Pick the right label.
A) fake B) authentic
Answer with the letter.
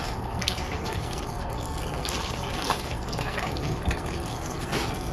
A